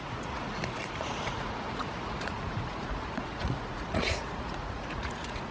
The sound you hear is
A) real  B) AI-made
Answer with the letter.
B